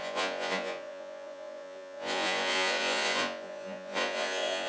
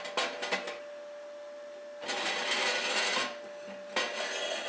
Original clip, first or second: second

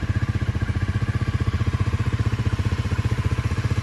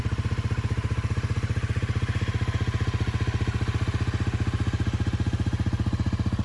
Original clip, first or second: second